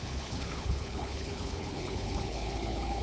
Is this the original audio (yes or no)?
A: no